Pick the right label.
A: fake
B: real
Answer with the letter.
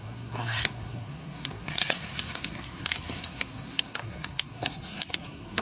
A